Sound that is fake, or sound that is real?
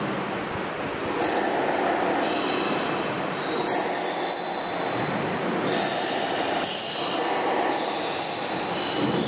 real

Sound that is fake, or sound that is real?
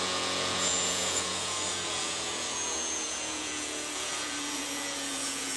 fake